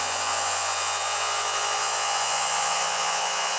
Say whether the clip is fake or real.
fake